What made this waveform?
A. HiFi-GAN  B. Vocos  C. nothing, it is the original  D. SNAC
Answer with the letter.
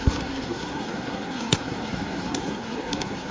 D